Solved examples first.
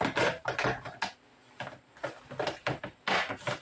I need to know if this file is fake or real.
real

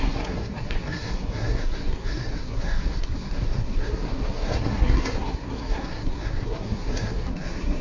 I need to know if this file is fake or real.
fake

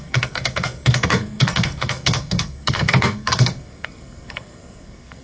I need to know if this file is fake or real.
fake